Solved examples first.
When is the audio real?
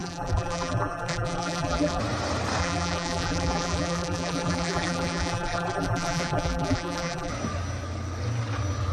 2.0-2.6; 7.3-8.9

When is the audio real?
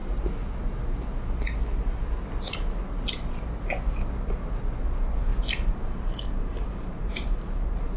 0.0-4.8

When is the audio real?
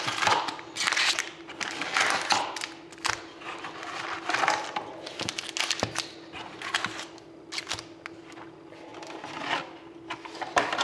0.0-10.8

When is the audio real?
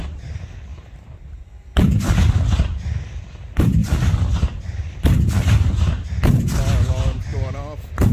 0.0-8.1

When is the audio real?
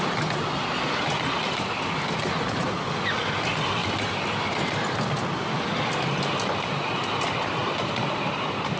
0.0-3.8; 5.8-7.6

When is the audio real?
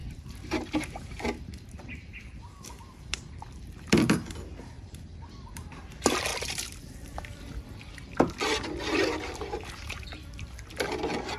0.0-11.4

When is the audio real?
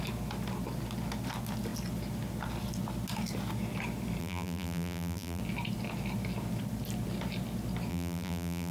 0.0-4.2; 5.4-7.9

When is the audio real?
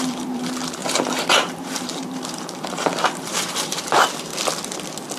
4.3-5.2